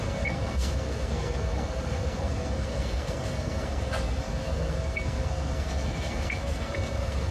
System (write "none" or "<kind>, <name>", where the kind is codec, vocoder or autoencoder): codec, SNAC